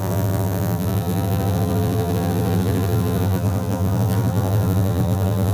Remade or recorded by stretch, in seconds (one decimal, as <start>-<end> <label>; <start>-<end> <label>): 0.0-5.5 remade